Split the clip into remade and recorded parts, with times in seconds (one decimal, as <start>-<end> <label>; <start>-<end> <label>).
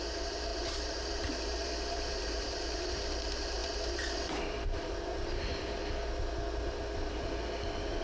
0.0-5.8 remade; 5.8-8.0 recorded